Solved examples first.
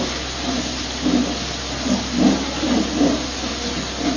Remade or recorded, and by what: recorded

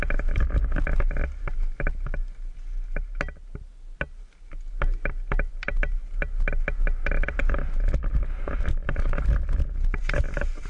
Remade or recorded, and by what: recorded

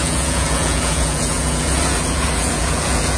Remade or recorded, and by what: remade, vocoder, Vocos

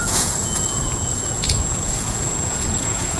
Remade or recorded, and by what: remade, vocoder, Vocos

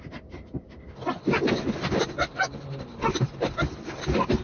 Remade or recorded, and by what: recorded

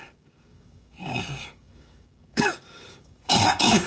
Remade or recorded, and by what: remade, codec, DAC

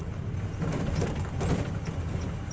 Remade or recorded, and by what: recorded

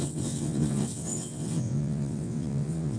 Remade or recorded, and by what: remade, vocoder, WaveNeXt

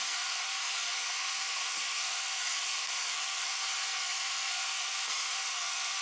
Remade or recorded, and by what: remade, codec, SNAC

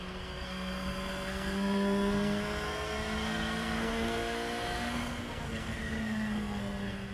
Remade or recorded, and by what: remade, codec, SNAC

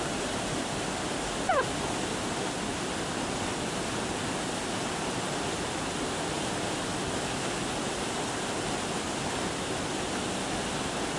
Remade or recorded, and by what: recorded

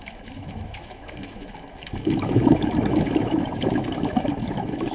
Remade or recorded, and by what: remade, autoencoder, DAC-VAE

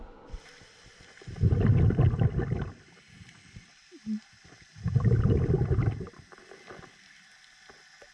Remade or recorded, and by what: recorded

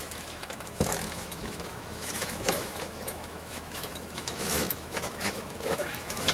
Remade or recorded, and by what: remade, autoencoder, DAC-VAE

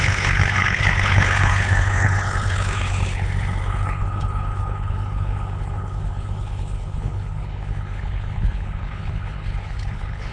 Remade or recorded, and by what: remade, codec, HILCodec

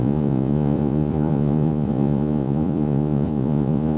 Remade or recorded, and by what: remade, vocoder, Vocos